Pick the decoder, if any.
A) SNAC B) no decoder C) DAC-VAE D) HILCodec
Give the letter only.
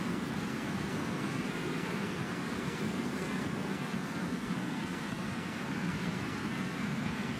A